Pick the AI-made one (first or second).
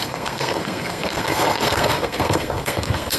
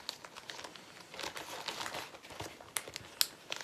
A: first